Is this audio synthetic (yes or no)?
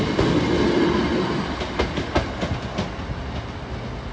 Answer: no